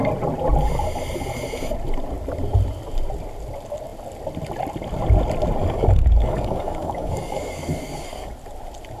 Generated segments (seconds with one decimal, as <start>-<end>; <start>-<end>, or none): 5.6-8.3